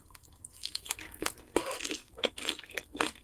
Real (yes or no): no